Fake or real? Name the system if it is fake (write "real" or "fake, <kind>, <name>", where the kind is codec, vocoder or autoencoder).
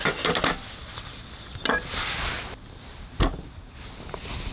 real